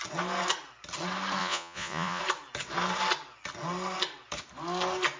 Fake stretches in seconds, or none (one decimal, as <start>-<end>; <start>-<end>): 1.4-2.2